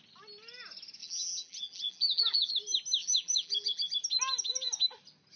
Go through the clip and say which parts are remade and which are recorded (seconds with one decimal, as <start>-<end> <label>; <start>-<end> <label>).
0.0-1.0 recorded; 1.0-2.5 remade; 2.5-3.0 recorded; 3.0-3.9 remade; 3.9-5.4 recorded